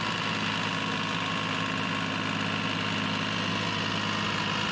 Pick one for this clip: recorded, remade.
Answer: recorded